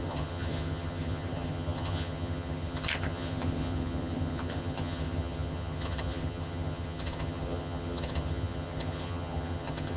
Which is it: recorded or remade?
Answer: remade